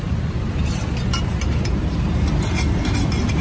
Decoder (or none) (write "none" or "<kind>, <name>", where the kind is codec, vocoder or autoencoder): none